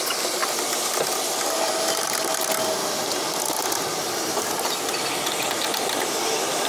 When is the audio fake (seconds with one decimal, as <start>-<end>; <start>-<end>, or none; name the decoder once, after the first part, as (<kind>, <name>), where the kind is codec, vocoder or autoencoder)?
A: none